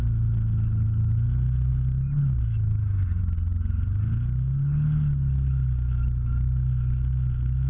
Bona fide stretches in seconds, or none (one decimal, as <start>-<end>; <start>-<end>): 0.0-7.7